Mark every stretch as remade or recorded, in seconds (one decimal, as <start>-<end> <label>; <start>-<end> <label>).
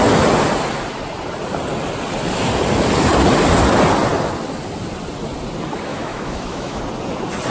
0.0-5.9 recorded; 5.9-6.8 remade; 6.8-7.5 recorded